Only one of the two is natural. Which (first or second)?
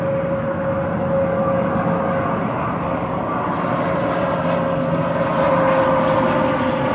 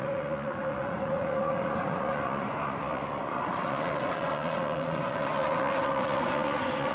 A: first